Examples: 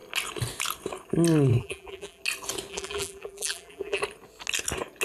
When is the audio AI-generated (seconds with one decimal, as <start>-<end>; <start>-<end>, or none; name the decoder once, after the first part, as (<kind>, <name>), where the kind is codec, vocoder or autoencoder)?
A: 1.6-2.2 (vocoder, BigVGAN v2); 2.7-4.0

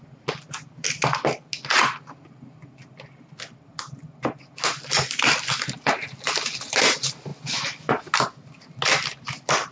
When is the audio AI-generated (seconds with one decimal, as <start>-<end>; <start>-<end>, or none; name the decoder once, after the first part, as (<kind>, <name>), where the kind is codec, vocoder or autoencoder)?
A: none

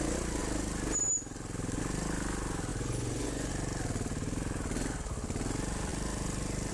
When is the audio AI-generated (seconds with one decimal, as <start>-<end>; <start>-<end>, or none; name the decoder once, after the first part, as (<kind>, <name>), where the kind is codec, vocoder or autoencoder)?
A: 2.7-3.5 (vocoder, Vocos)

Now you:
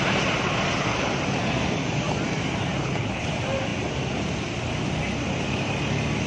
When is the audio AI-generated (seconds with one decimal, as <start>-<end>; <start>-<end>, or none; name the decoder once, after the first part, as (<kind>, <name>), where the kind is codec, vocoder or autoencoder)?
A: 2.8-3.3 (codec, HILCodec)

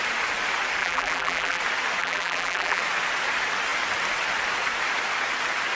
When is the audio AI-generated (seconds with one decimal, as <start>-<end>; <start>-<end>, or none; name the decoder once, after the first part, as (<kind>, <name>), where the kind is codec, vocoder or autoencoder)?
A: 0.8-1.6 (vocoder, BigVGAN v2); 2.0-2.8